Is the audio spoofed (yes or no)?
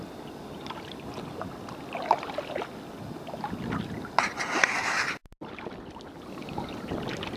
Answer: no